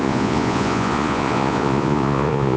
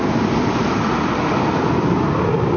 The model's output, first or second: first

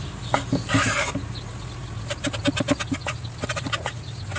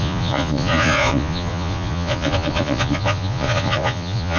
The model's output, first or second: second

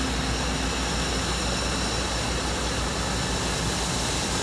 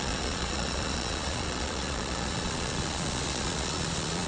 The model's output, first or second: second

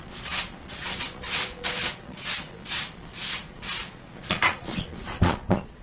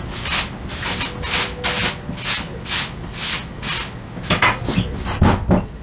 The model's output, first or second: first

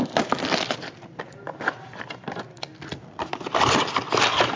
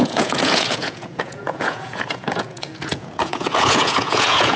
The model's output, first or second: second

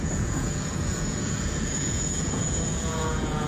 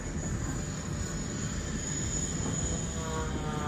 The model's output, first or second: first